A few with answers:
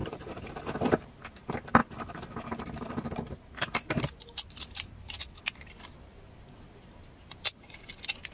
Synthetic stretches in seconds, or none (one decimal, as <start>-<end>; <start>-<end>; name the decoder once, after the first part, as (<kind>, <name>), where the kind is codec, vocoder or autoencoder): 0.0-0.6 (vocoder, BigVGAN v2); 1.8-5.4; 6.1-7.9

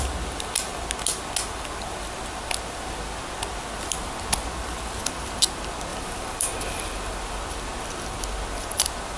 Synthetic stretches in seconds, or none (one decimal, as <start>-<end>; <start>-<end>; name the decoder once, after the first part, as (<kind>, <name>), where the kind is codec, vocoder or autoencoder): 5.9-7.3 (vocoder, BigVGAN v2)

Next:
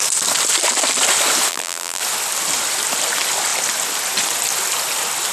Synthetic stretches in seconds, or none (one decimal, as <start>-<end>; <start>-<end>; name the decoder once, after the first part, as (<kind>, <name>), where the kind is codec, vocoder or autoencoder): 1.5-2.0 (vocoder, BigVGAN v2)

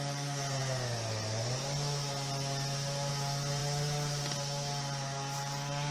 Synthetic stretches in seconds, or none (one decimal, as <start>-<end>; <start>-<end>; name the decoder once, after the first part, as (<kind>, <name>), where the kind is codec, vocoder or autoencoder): none